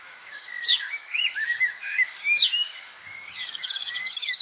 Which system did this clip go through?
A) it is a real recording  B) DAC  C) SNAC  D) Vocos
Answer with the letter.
B